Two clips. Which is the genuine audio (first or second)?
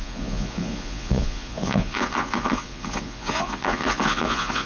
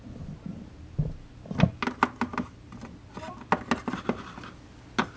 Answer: second